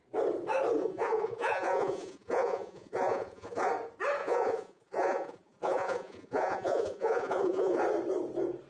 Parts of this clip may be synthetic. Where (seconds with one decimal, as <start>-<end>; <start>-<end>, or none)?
0.8-3.7; 4.2-7.8